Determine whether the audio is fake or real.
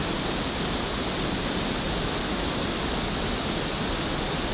real